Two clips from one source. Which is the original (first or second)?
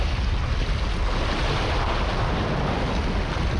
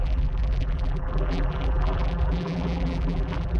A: first